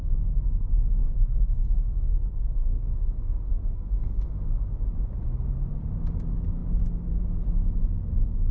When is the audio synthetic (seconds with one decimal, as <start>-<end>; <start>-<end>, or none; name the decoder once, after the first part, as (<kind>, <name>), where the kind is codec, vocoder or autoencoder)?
0.0-4.7 (codec, SNAC)